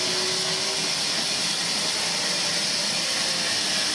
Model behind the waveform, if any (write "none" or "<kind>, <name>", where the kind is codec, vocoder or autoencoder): none